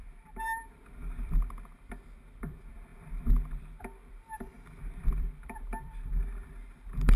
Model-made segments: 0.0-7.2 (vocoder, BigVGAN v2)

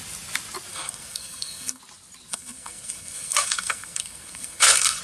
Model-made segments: 0.7-1.8 (codec, SNAC); 2.3-5.0

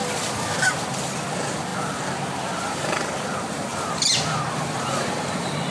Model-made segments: none